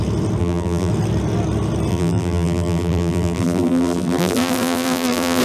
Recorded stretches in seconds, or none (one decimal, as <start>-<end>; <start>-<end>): 0.0-0.4; 0.9-1.9